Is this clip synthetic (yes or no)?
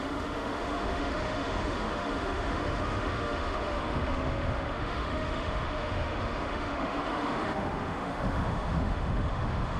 yes